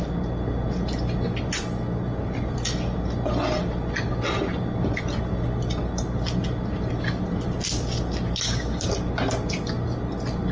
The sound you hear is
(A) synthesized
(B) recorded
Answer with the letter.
B